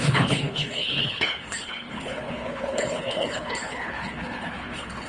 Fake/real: fake